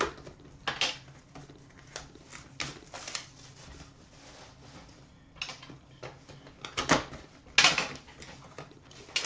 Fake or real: real